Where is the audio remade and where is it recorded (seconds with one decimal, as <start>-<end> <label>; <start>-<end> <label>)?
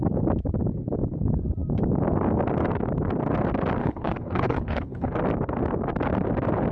0.0-3.8 recorded; 3.8-5.1 remade; 5.1-6.7 recorded